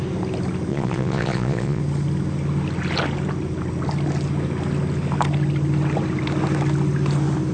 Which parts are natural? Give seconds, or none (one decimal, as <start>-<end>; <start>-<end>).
0.0-0.7; 1.8-7.5